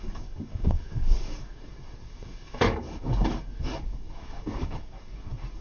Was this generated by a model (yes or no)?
yes